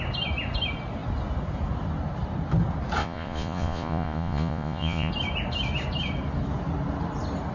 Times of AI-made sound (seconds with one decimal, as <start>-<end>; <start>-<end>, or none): 3.0-5.1